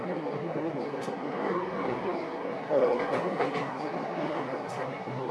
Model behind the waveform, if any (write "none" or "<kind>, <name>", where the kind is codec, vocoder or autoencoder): codec, SNAC